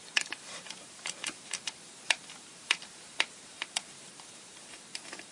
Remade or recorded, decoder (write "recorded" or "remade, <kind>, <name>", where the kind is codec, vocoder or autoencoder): remade, vocoder, BigVGAN v2